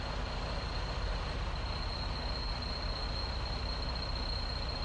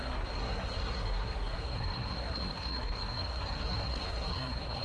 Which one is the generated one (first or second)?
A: second